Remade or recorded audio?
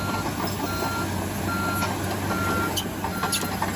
recorded